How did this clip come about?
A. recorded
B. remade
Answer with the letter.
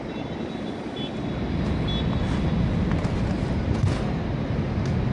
A